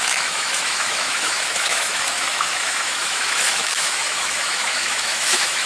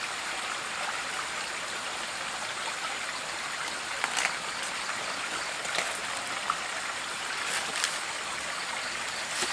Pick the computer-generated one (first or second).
first